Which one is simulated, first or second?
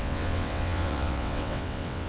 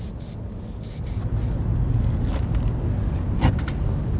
first